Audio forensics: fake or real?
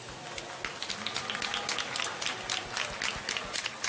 real